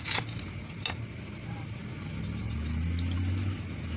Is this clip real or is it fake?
real